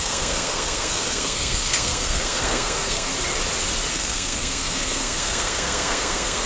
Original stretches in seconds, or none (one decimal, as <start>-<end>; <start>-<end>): 3.1-3.9